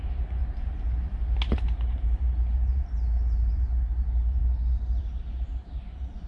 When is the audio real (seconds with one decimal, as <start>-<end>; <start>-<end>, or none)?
0.4-1.5; 4.4-5.0